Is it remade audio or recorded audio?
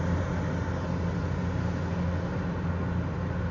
recorded